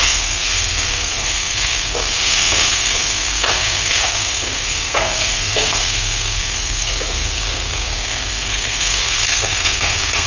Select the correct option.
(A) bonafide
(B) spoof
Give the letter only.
B